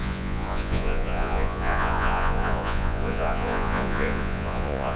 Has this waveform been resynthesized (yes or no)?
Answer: yes